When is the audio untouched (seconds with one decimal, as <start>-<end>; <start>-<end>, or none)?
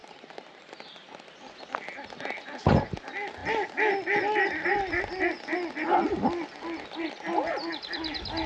0.0-8.5